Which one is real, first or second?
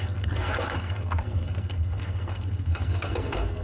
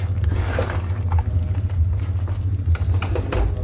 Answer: second